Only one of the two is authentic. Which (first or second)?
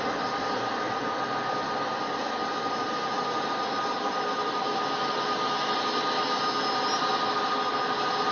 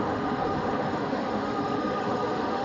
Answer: first